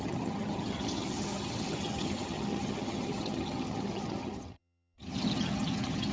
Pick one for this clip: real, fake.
fake